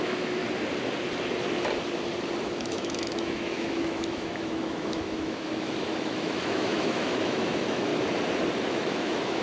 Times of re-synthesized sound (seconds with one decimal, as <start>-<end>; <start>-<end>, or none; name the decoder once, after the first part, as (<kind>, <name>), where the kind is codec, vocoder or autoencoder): 0.0-0.4 (autoencoder, DAC-VAE); 2.4-7.9; 8.7-9.4